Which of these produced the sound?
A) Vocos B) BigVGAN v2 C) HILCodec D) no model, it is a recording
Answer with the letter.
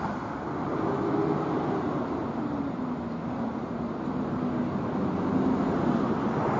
D